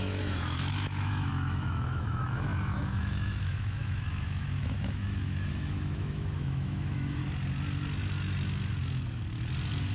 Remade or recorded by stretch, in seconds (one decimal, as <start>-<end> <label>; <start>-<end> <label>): 0.0-7.2 remade; 7.2-9.9 recorded